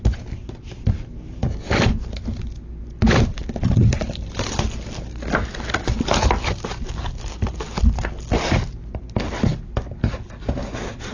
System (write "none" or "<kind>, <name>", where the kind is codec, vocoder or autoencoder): none